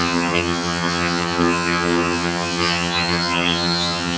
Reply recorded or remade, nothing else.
remade